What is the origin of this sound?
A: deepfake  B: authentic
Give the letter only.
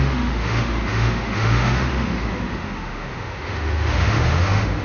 A